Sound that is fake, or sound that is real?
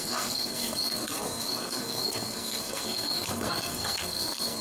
fake